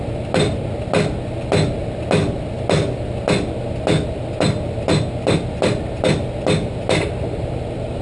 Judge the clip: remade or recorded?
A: recorded